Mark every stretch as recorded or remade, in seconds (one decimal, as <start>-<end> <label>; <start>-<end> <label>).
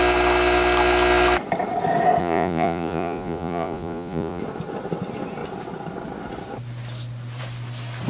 0.0-2.2 recorded; 2.2-4.4 remade; 4.4-8.1 recorded